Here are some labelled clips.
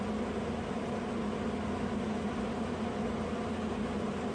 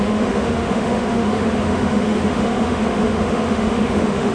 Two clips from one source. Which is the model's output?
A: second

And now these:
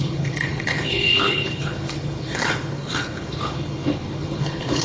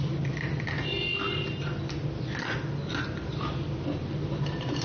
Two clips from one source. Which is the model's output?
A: first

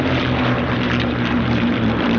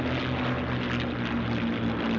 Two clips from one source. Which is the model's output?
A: first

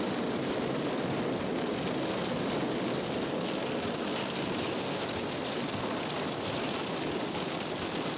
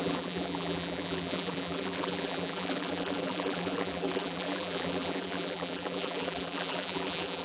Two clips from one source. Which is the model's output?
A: second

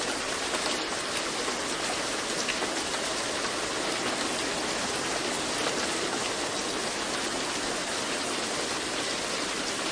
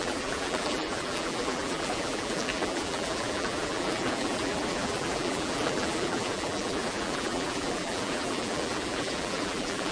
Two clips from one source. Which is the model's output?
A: second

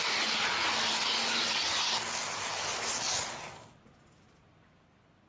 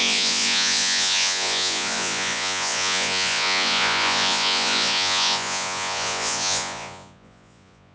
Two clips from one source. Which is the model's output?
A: second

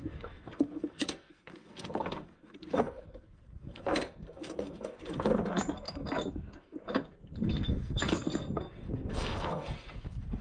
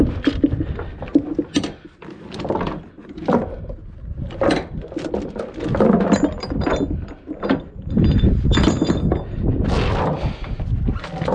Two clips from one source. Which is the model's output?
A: first